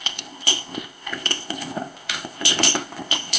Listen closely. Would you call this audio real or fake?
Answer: fake